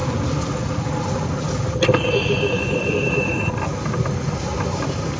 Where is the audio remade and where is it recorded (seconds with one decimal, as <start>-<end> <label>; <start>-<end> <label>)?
0.0-5.2 recorded